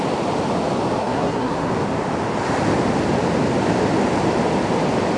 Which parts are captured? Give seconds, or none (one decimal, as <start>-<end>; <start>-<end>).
0.0-1.0; 1.7-5.2